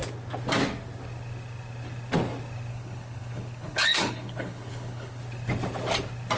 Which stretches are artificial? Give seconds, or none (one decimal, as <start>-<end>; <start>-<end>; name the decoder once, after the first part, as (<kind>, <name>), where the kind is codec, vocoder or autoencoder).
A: 2.7-5.2 (codec, HILCodec)